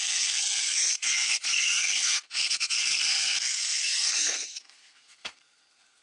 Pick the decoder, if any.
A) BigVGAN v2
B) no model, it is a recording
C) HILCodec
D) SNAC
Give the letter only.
D